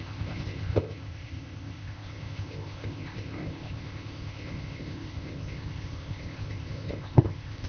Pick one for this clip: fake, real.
fake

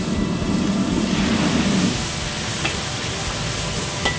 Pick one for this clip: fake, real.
real